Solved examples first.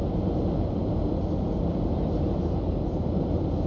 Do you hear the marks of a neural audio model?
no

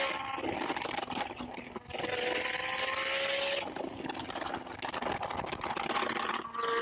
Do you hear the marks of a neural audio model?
no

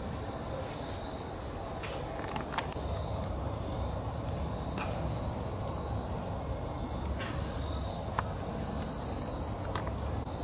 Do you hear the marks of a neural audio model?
no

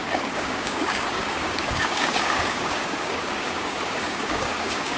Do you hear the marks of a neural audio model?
yes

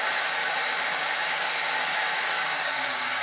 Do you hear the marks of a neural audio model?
yes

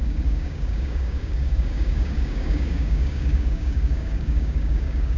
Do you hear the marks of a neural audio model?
yes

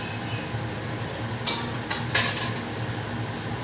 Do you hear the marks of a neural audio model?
no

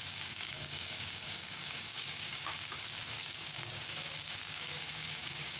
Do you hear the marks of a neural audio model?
yes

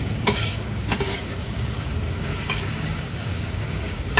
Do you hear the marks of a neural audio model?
yes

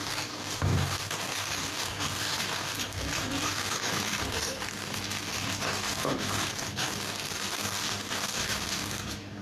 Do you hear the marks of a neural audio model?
yes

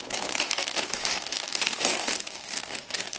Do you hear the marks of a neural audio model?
yes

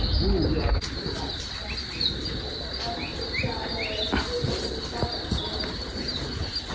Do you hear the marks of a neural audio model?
no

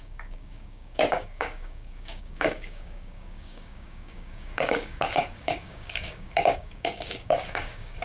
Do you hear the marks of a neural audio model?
yes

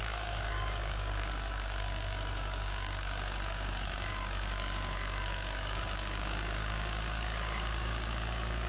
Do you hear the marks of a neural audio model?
yes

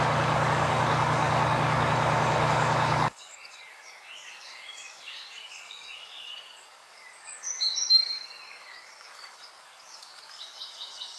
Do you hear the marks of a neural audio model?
yes